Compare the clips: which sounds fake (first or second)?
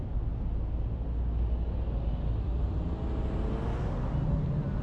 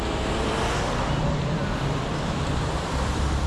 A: second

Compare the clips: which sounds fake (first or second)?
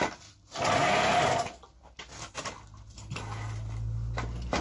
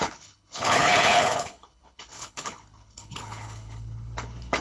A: second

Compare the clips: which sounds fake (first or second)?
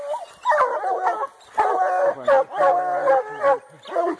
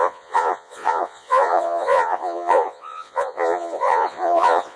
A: second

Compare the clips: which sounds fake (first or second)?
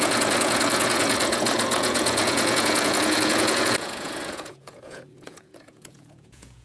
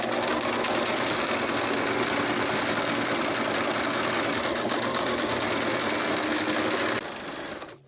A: first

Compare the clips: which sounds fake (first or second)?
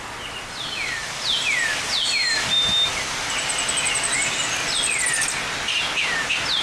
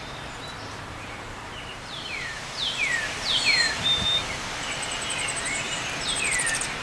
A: second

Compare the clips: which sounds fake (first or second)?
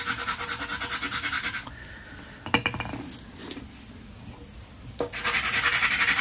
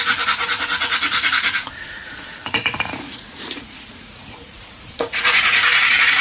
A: second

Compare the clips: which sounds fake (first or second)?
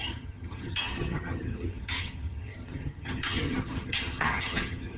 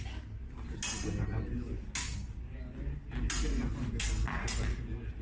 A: first